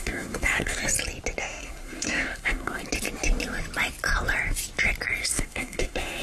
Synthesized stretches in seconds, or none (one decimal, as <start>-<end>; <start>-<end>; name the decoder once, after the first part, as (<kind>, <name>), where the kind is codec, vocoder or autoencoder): 0.0-0.8 (codec, SNAC); 1.4-2.8; 5.2-6.2